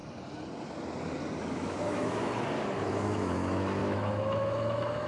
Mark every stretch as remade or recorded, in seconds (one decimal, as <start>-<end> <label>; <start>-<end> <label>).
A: 0.0-1.5 recorded; 1.5-2.3 remade; 2.3-2.9 recorded; 2.9-5.1 remade